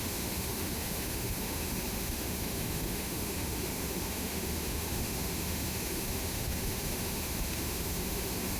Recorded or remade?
remade